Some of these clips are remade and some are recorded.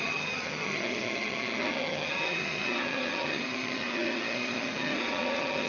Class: remade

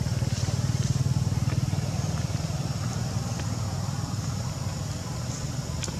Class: recorded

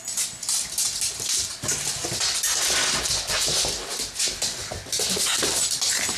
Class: recorded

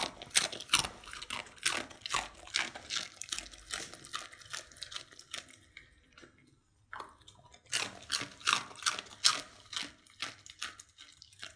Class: recorded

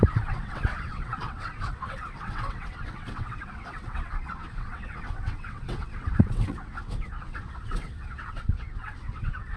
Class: remade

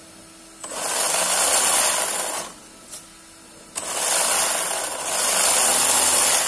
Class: recorded